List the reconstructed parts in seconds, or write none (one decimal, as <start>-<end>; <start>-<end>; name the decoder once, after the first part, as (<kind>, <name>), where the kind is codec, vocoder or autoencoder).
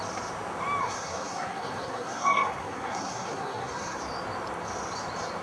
0.8-4.0 (codec, SNAC)